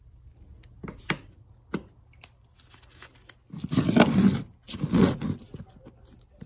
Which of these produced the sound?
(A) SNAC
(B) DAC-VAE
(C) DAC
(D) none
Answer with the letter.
D